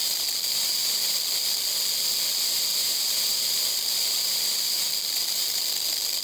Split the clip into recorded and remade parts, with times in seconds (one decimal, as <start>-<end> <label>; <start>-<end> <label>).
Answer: 0.0-1.2 remade; 1.2-2.8 recorded; 2.8-5.6 remade; 5.6-6.2 recorded